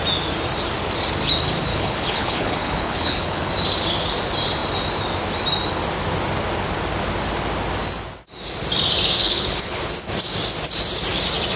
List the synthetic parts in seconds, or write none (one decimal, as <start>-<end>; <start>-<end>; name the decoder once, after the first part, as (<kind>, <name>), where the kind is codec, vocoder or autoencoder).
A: 1.7-3.5 (codec, HILCodec); 9.2-9.8